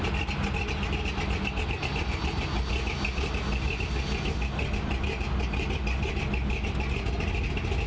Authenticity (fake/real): real